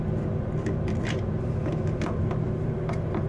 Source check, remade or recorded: recorded